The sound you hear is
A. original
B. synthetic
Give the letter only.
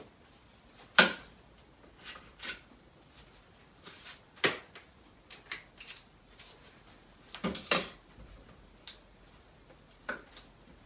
A